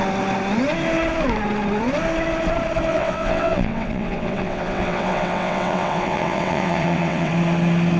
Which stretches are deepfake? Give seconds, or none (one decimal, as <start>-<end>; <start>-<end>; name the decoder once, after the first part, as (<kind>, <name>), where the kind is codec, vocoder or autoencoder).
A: 2.9-7.3 (vocoder, WaveNeXt)